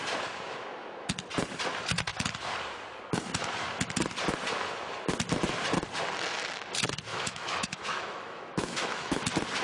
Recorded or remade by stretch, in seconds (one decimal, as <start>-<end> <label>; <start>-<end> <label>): 0.0-7.1 recorded; 7.1-9.2 remade; 9.2-9.6 recorded